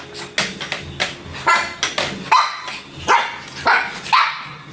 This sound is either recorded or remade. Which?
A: recorded